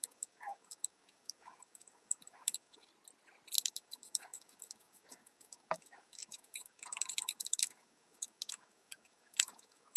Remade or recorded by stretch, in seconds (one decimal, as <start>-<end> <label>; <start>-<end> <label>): 0.0-2.9 remade; 2.9-3.6 recorded; 3.6-10.0 remade